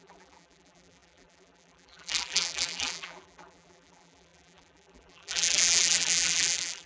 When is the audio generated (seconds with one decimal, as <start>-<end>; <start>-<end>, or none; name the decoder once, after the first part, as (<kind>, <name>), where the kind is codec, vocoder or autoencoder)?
0.0-6.9 (vocoder, BigVGAN v2)